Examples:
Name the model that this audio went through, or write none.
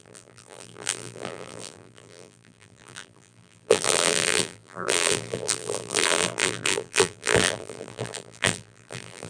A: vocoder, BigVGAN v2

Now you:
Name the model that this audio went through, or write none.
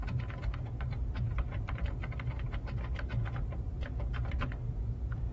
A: vocoder, BigVGAN v2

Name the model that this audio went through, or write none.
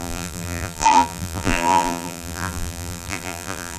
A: vocoder, BigVGAN v2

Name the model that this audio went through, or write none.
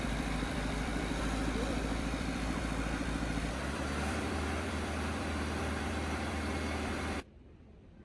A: vocoder, BigVGAN v2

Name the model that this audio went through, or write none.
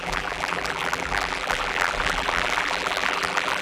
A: vocoder, BigVGAN v2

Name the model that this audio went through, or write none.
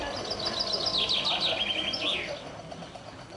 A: none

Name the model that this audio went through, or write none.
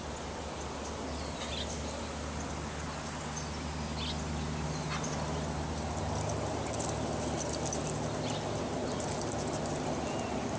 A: none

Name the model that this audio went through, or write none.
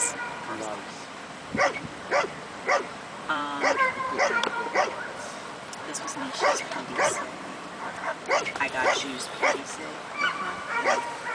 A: vocoder, BigVGAN v2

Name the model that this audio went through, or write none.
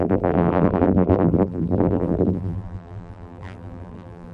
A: vocoder, BigVGAN v2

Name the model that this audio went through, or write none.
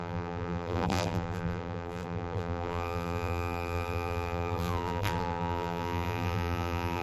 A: vocoder, BigVGAN v2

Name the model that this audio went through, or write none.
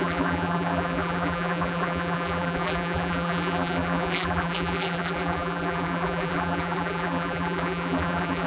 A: vocoder, BigVGAN v2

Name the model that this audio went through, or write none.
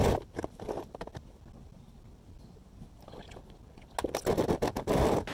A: none